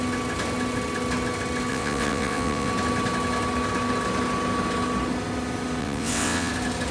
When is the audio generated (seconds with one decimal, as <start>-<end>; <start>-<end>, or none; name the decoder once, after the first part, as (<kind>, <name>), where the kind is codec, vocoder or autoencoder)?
1.7-2.7 (vocoder, WaveNeXt); 5.8-6.5